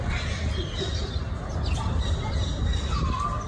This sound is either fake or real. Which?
real